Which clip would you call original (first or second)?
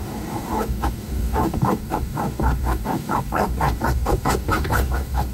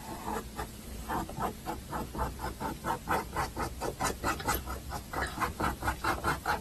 second